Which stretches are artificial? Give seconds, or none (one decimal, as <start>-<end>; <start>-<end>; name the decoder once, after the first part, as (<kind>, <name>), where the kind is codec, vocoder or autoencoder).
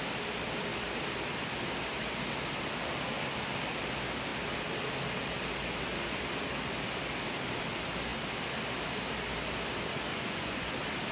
10.1-10.7 (vocoder, Vocos)